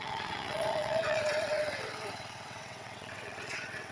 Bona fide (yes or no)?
no